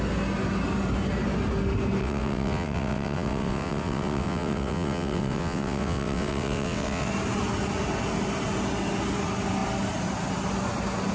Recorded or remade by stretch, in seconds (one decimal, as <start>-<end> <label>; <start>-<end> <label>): 0.0-2.0 recorded; 2.0-7.1 remade; 7.1-11.1 recorded